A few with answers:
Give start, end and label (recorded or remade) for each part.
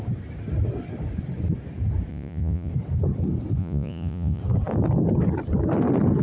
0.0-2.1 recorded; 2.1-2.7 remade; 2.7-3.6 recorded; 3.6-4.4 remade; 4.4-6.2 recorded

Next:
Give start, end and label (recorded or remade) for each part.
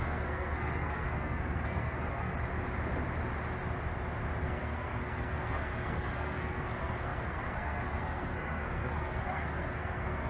0.0-2.3 remade; 2.3-4.4 recorded; 4.4-10.3 remade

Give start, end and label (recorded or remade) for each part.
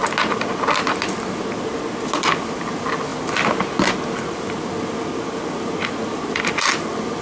0.0-7.2 recorded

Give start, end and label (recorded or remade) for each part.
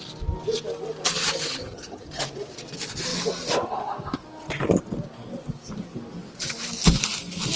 0.0-1.6 recorded; 1.6-2.2 remade; 2.2-7.6 recorded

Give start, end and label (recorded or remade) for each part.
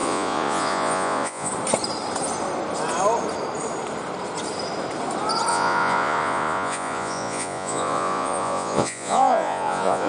0.0-1.5 remade; 1.5-5.5 recorded; 5.5-10.1 remade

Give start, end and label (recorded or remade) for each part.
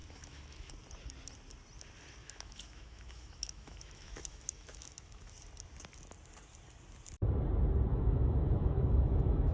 0.0-0.7 remade; 0.7-2.2 recorded; 2.2-5.3 remade; 5.3-7.9 recorded; 7.9-9.5 remade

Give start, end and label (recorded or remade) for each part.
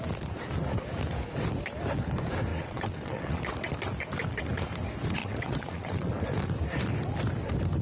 0.0-2.5 recorded; 2.5-3.4 remade; 3.4-5.2 recorded; 5.2-6.1 remade; 6.1-7.8 recorded